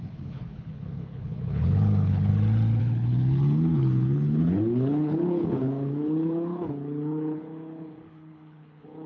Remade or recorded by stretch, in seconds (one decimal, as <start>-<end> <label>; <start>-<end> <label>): 0.0-2.3 remade; 2.3-2.8 recorded; 2.8-9.1 remade